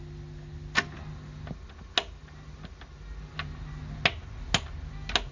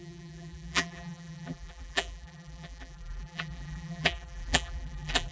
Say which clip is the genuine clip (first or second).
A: first